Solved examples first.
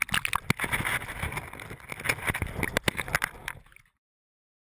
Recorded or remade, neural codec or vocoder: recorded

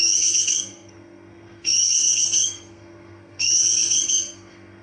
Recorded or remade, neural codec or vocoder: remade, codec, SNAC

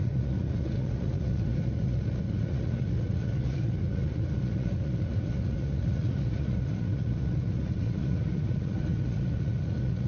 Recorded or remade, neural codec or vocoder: remade, vocoder, Vocos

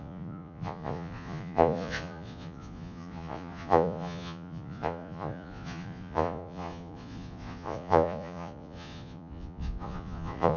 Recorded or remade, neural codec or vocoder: remade, vocoder, Vocos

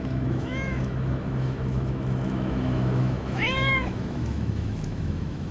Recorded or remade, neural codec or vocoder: remade, autoencoder, DAC-VAE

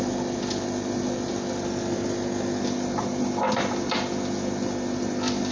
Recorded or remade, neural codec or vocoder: recorded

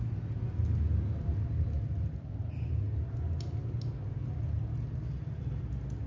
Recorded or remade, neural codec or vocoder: recorded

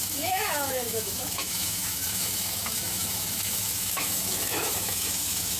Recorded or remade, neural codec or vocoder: remade, autoencoder, DAC-VAE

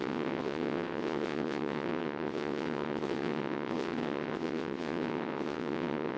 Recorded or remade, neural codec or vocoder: remade, vocoder, WaveNeXt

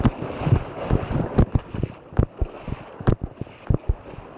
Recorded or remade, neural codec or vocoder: recorded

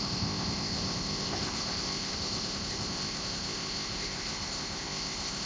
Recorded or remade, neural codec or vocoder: remade, codec, ZipCodec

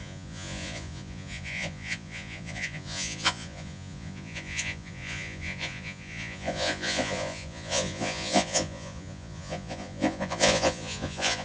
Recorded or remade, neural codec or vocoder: remade, vocoder, Vocos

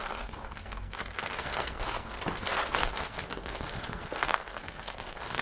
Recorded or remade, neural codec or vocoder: remade, codec, SNAC